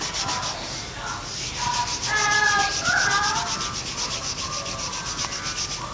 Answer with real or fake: real